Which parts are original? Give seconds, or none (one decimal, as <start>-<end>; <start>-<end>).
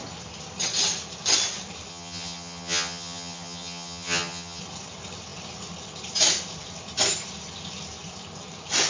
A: 0.0-1.9; 4.6-8.9